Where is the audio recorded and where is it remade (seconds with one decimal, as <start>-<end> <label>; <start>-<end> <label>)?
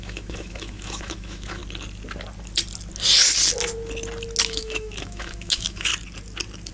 0.0-1.6 remade; 1.6-4.4 recorded; 4.4-5.9 remade; 5.9-6.7 recorded